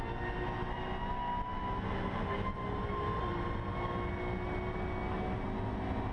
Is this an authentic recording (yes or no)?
yes